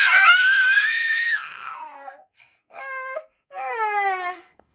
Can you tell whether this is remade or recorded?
remade